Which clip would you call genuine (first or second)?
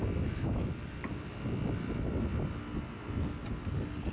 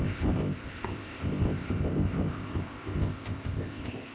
first